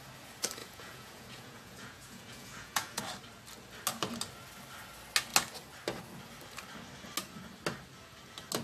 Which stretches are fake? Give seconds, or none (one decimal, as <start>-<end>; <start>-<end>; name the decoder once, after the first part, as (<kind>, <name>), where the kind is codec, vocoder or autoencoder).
0.6-3.0 (vocoder, Vocos)